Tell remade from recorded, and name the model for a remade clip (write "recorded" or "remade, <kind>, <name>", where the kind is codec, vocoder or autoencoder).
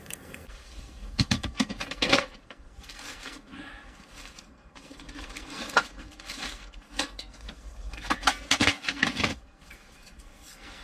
remade, codec, SNAC